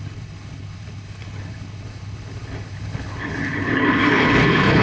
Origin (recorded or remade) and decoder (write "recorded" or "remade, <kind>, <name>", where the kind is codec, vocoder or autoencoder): remade, codec, HILCodec